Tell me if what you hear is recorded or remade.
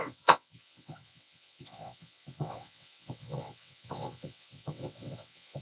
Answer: remade